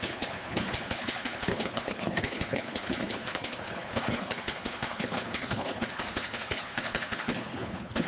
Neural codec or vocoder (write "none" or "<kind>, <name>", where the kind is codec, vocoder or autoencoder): codec, HILCodec